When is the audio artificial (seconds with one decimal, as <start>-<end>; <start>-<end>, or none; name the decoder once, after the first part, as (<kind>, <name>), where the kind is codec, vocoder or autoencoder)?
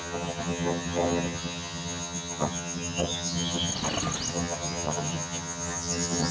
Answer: 0.0-3.7 (vocoder, HiFi-GAN); 4.3-6.3